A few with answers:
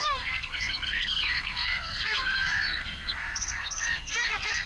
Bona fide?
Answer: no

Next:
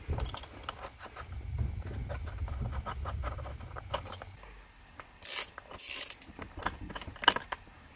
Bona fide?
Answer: yes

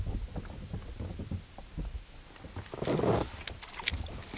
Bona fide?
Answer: yes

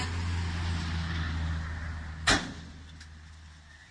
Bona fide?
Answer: yes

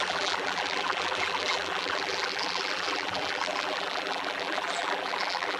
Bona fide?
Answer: no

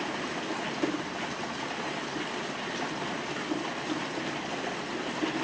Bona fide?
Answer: yes